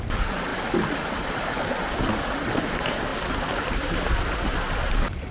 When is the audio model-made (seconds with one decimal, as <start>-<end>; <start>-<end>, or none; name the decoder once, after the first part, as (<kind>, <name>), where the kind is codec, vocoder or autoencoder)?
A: 0.5-1.9 (vocoder, BigVGAN v2)